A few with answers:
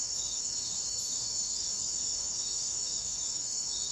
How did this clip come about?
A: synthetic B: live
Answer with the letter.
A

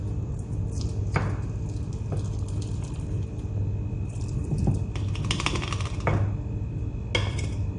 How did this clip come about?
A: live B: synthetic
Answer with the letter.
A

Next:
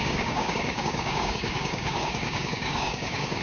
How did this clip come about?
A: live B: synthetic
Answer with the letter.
B